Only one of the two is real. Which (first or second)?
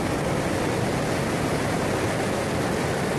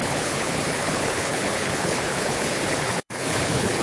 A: first